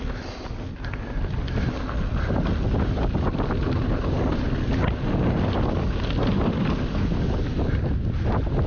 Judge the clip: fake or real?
real